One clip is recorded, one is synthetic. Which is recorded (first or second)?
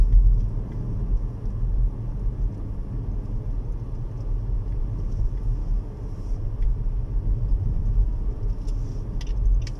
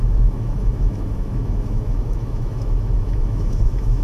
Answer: first